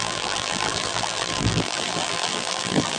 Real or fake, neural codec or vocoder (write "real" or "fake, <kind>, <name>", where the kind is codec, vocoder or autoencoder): fake, vocoder, BigVGAN v2